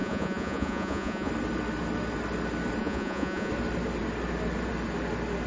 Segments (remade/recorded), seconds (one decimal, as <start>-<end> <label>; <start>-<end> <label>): 0.0-1.3 remade; 1.3-2.8 recorded; 2.8-3.5 remade; 3.5-5.5 recorded